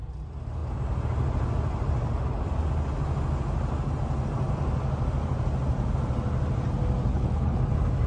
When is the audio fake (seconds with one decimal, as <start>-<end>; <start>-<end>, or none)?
7.1-7.6